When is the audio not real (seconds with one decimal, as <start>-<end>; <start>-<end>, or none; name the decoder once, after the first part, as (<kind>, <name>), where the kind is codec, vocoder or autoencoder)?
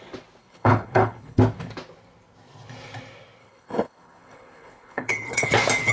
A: 0.4-1.4 (codec, HILCodec); 3.4-5.5